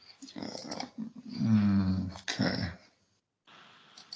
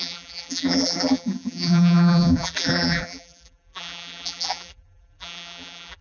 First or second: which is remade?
second